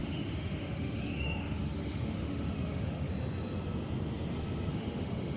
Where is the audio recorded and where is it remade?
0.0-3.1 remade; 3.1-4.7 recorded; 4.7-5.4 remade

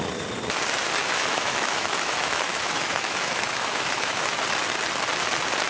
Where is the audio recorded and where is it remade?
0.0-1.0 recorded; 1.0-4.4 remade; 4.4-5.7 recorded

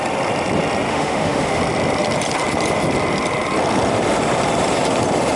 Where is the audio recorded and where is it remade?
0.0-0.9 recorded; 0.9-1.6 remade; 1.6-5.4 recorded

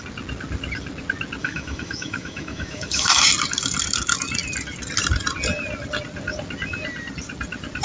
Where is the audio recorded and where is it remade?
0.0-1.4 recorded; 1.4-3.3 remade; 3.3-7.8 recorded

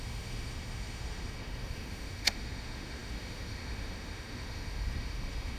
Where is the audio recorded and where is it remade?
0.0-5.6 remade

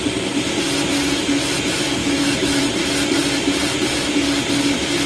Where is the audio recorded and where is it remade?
0.0-2.0 recorded; 2.0-2.6 remade; 2.6-5.1 recorded